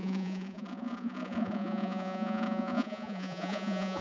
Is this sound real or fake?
fake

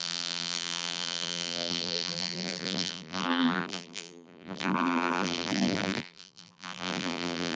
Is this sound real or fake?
fake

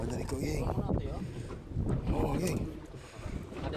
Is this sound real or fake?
real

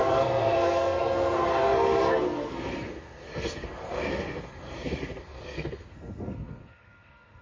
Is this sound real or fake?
fake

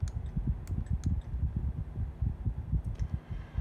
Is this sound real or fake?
real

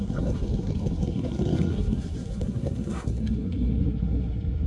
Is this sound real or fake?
fake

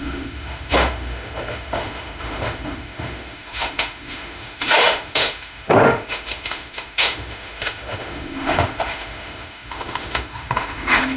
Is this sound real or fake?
fake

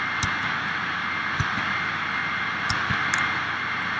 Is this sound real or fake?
real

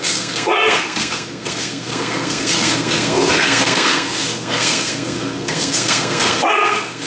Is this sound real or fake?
fake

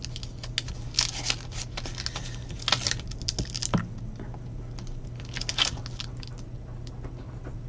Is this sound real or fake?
real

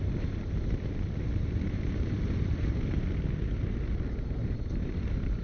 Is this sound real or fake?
fake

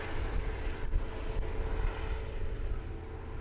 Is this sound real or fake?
real